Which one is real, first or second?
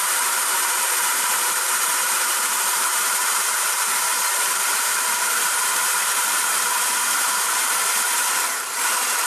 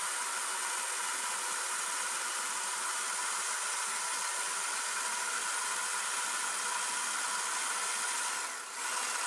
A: second